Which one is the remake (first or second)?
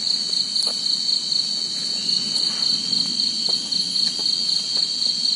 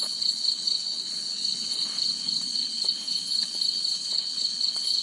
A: second